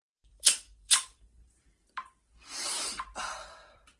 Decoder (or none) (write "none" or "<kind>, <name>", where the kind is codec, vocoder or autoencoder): vocoder, BigVGAN v2